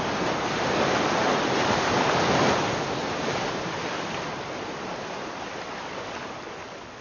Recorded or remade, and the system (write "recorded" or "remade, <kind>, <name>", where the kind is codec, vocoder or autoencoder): recorded